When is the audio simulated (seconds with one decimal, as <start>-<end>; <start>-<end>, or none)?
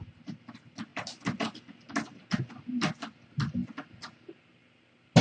none